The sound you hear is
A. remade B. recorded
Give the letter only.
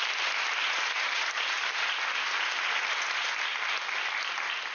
B